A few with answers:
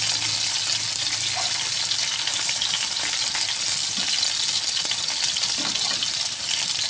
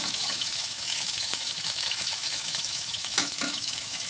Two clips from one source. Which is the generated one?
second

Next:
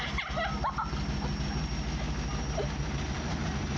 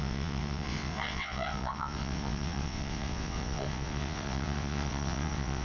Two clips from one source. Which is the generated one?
second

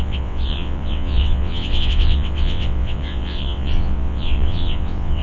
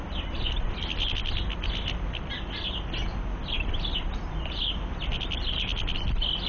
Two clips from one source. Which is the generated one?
first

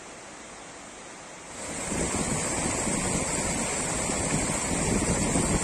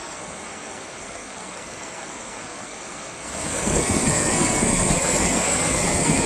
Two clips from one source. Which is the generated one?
second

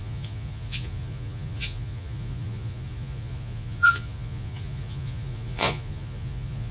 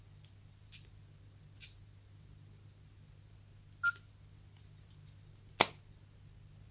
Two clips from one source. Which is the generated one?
first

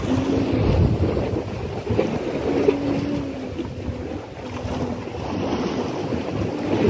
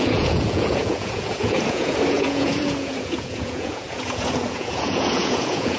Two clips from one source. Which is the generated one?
second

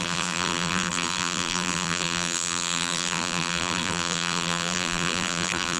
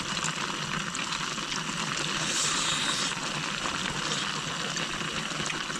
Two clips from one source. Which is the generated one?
first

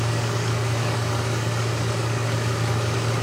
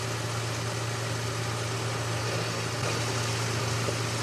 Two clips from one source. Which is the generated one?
first